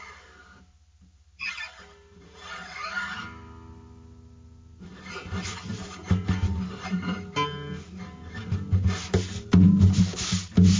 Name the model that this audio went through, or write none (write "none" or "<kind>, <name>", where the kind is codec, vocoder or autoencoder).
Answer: none